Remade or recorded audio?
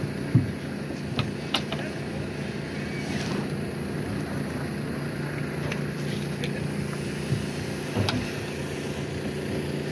recorded